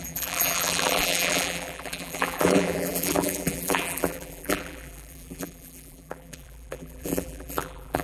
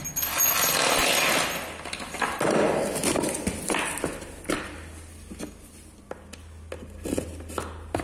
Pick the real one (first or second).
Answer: second